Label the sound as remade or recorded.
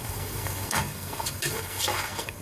remade